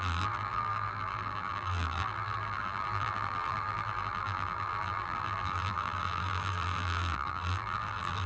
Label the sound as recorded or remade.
remade